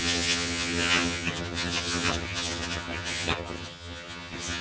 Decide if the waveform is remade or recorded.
remade